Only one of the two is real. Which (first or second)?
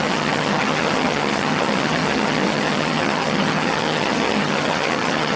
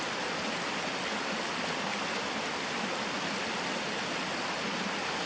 second